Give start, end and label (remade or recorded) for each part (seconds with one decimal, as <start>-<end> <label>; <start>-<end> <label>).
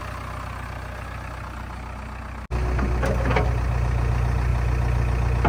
0.0-5.5 recorded